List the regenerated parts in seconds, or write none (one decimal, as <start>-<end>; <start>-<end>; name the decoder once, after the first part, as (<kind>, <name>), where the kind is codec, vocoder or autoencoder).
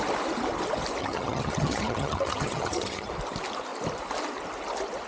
1.0-3.1 (vocoder, HiFi-GAN)